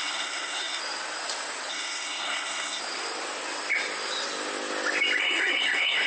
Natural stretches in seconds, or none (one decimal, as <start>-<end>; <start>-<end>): 0.8-1.7; 2.8-5.2